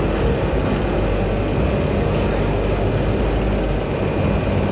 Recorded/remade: recorded